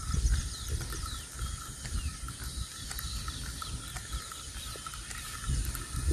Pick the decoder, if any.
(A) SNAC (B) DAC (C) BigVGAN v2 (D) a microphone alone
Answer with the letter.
D